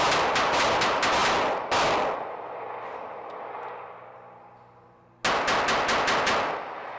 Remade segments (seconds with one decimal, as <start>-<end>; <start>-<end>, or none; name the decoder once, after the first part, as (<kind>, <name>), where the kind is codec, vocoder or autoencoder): none